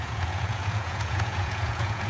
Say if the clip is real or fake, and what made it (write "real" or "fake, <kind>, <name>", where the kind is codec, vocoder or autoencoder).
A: fake, vocoder, Vocos